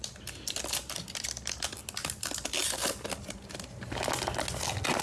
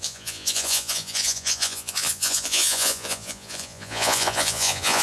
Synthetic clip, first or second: second